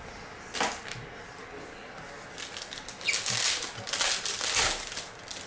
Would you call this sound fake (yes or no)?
no